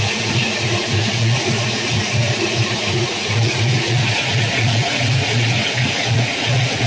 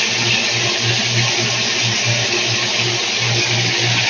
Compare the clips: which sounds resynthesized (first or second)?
first